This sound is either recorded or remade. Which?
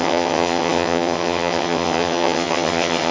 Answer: remade